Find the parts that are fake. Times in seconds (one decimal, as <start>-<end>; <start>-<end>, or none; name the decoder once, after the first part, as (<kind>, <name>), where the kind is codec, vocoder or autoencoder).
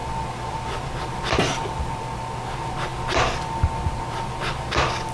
0.0-2.0 (vocoder, BigVGAN v2)